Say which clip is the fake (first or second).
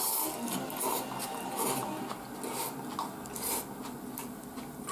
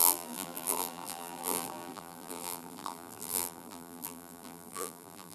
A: second